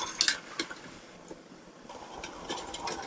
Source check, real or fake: real